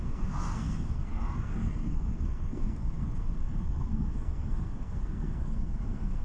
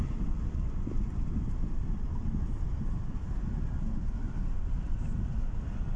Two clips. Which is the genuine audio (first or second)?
second